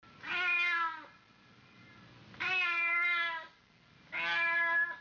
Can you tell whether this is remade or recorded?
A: recorded